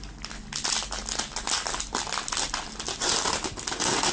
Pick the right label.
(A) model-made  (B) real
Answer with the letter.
B